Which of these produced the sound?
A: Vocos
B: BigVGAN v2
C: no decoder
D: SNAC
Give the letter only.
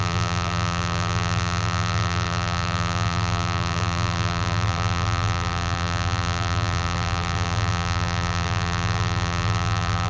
B